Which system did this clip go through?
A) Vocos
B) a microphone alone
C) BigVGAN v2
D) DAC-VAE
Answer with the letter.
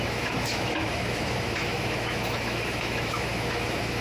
D